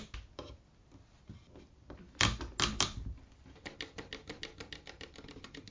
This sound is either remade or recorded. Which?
recorded